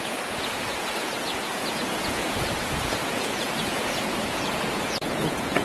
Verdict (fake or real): fake